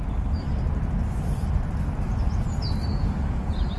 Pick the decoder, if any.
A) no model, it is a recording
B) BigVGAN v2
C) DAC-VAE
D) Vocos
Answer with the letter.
A